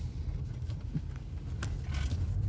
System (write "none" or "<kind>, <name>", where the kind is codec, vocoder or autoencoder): none